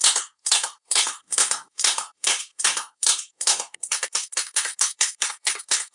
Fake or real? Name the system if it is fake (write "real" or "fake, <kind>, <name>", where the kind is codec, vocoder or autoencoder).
fake, codec, SNAC